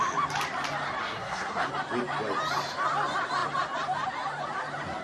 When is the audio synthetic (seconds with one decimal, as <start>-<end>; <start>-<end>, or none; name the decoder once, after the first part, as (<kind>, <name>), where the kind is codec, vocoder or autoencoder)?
1.0-1.7 (codec, SNAC)